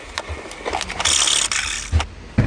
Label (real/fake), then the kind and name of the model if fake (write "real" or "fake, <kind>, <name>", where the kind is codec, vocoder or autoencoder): real